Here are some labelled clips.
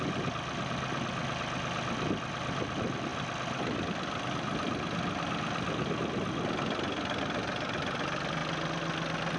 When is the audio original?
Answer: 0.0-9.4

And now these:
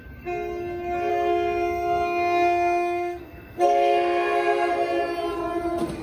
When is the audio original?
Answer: 0.0-1.1; 4.7-6.0